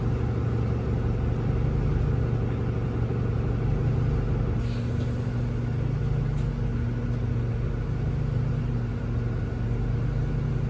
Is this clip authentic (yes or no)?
yes